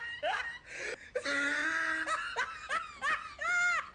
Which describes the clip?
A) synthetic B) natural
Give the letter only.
B